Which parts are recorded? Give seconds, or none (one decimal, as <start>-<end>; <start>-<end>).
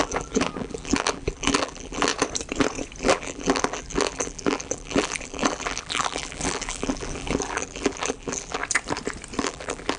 2.1-3.0; 8.6-9.4